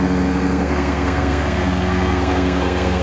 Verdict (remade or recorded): remade